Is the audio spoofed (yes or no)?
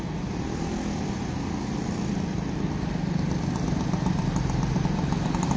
no